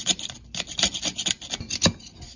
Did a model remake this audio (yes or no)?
no